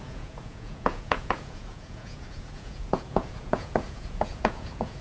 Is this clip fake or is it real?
fake